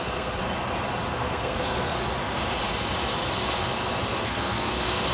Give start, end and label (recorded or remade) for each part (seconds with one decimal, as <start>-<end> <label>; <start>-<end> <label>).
0.0-0.4 remade; 0.4-1.1 recorded; 1.1-2.0 remade; 2.0-4.2 recorded; 4.2-5.1 remade